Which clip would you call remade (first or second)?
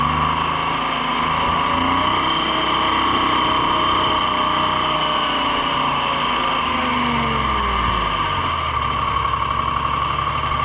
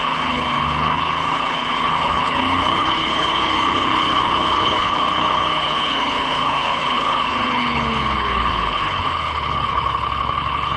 second